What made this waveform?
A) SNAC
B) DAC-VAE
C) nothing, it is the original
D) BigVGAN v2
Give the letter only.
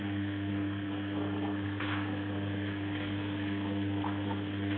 A